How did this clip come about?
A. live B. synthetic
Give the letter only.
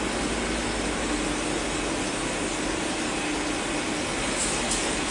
A